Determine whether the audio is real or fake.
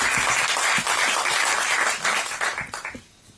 real